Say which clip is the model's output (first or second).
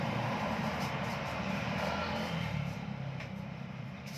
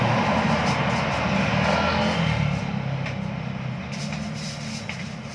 first